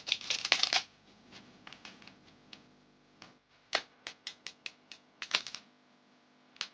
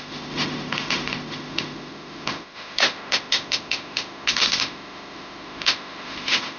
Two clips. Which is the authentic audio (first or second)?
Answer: first